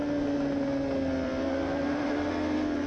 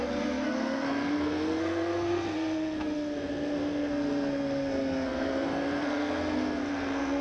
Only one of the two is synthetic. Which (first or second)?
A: second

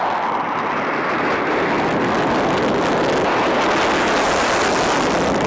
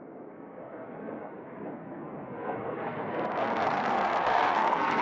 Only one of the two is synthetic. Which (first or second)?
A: second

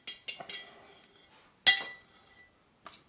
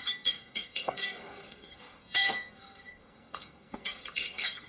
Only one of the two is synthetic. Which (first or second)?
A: second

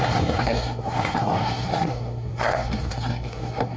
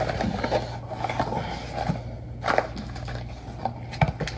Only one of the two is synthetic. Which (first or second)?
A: first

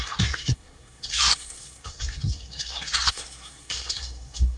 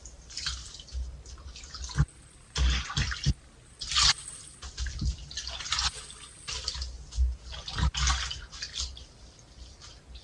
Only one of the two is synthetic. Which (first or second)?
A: first